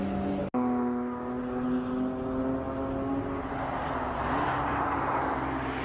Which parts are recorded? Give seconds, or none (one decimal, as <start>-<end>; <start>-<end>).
0.0-5.8